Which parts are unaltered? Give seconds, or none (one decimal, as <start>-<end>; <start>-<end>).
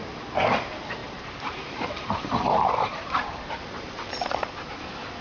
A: 0.0-1.0; 4.1-5.2